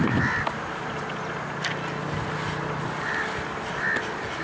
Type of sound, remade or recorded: recorded